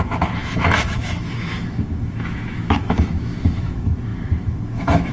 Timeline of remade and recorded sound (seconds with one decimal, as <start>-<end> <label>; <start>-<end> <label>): 0.0-5.1 remade